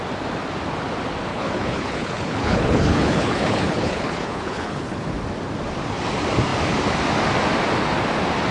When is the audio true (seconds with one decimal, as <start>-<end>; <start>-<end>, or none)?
0.0-1.3; 5.0-8.5